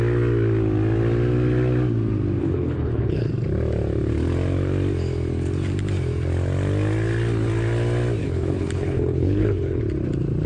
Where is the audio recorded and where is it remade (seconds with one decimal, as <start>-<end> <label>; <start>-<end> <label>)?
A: 0.0-2.4 recorded; 2.4-3.3 remade; 3.3-8.2 recorded; 8.2-9.8 remade; 9.8-10.5 recorded